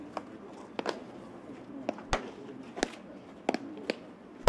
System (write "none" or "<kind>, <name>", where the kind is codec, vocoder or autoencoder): none